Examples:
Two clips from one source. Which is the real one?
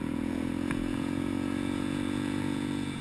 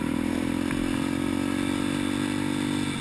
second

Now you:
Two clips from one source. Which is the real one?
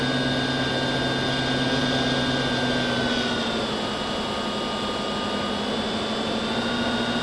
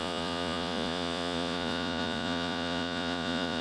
first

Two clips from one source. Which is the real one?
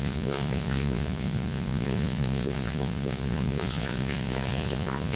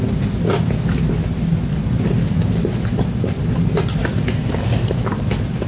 second